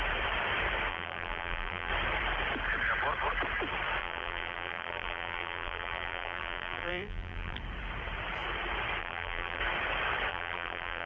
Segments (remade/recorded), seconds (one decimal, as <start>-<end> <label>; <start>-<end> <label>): 0.0-0.9 recorded; 0.9-1.9 remade; 1.9-4.0 recorded; 4.0-7.6 remade; 7.6-9.0 recorded; 9.0-9.6 remade; 9.6-10.3 recorded; 10.3-11.1 remade